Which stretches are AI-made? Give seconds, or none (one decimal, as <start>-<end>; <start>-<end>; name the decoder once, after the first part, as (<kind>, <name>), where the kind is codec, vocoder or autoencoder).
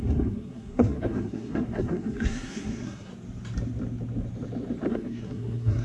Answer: 0.0-3.1 (codec, SNAC); 4.9-5.8